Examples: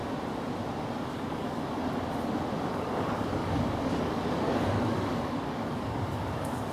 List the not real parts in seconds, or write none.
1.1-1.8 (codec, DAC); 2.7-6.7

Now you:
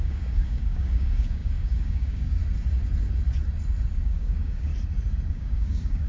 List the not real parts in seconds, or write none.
0.0-2.4 (codec, DAC); 3.9-4.7; 5.3-6.1

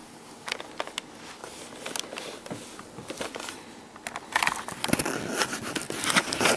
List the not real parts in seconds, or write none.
0.0-0.7 (codec, DAC)

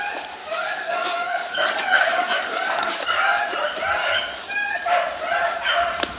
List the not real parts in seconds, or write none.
0.4-3.4 (codec, DAC); 4.0-4.8